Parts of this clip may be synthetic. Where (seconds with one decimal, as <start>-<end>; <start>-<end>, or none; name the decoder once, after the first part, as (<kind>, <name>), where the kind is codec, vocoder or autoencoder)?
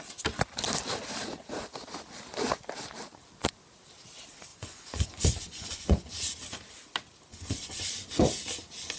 4.5-6.1 (vocoder, Vocos); 7.3-7.9